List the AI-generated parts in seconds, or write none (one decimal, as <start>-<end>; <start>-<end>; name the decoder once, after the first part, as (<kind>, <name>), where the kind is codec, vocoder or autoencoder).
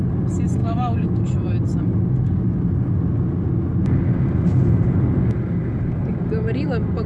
0.6-1.2 (autoencoder, DAC-VAE)